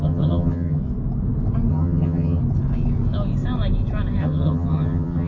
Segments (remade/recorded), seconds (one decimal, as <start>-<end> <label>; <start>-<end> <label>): 0.0-0.8 remade; 0.8-1.7 recorded; 1.7-2.4 remade; 2.4-4.2 recorded; 4.2-5.3 remade